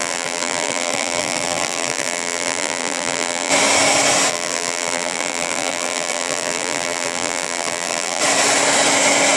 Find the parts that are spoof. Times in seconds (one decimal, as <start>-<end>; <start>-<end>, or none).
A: 0.0-3.5; 4.3-8.2